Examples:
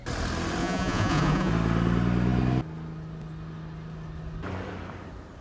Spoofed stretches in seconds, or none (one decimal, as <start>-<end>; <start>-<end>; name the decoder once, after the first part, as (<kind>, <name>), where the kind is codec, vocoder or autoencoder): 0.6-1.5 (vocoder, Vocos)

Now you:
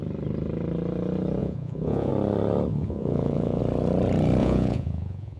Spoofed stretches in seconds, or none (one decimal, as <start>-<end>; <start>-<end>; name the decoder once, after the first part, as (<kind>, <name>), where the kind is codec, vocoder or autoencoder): 1.4-2.1 (vocoder, Vocos); 2.7-3.6; 4.4-5.4

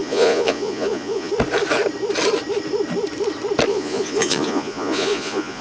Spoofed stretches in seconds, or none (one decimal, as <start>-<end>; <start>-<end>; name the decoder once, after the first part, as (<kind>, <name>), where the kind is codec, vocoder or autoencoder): 0.0-1.3 (vocoder, Vocos); 3.7-5.6

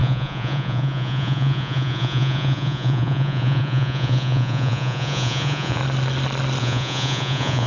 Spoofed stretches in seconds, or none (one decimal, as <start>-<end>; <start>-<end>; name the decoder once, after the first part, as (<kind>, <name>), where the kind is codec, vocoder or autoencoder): 0.0-5.8 (vocoder, Vocos); 6.6-7.7

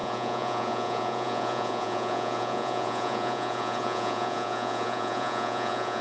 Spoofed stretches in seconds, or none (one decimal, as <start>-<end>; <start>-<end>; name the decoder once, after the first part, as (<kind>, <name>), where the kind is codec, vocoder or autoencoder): 0.0-6.0 (vocoder, Vocos)

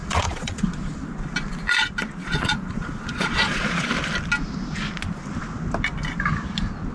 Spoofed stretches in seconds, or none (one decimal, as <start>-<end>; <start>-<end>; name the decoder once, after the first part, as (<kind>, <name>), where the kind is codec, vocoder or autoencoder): 0.0-1.1 (vocoder, Vocos); 2.2-3.9

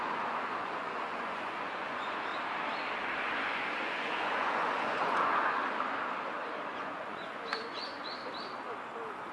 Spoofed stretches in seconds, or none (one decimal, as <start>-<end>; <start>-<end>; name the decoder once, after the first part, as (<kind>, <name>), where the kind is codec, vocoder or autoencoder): 0.0-2.3 (vocoder, Vocos); 3.0-5.6; 6.7-8.2

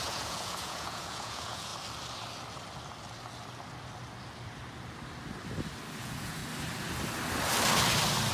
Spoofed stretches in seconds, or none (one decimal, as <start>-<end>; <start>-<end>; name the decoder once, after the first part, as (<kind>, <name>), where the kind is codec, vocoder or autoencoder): 0.0-1.7 (vocoder, Vocos); 6.0-6.4